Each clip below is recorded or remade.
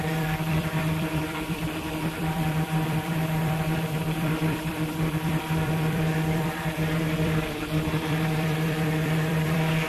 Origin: remade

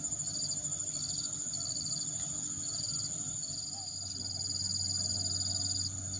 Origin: recorded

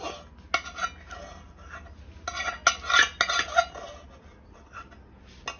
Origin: recorded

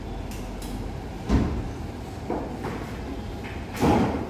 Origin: recorded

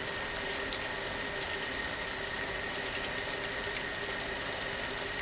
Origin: recorded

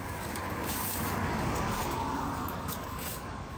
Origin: remade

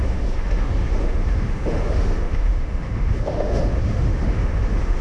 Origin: remade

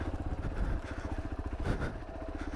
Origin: recorded